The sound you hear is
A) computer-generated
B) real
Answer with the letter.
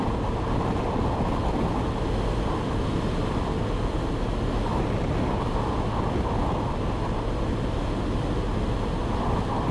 B